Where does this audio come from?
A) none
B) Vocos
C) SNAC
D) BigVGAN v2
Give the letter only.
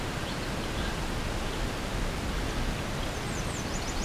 A